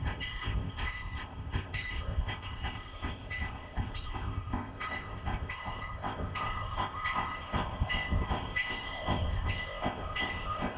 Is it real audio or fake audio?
fake